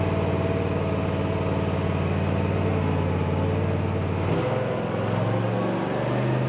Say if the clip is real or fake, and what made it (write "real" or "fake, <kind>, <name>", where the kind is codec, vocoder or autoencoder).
real